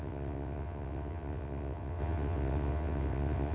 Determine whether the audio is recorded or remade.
remade